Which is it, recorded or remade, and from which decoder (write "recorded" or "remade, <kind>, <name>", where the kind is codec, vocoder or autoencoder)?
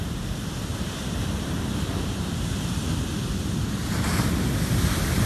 recorded